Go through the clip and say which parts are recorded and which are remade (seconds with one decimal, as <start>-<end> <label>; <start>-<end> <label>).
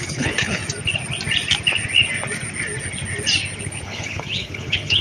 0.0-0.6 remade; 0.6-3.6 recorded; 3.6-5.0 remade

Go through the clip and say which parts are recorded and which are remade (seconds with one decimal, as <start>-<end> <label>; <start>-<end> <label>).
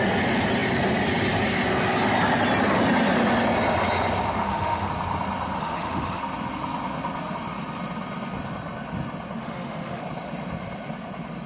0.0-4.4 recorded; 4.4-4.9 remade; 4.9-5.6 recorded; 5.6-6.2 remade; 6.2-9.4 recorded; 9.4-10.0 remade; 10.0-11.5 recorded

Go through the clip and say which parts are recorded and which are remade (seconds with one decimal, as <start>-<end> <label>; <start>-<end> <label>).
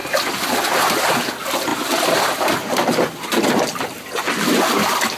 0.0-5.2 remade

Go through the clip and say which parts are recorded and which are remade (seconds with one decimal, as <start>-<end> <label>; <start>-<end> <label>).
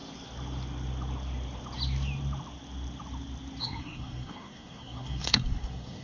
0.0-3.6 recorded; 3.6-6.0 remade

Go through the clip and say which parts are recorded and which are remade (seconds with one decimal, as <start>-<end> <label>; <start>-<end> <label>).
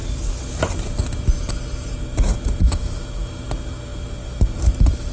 0.0-5.1 recorded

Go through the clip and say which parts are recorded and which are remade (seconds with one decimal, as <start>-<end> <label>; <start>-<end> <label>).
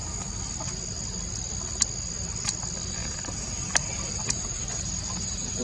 0.0-3.0 recorded; 3.0-5.6 remade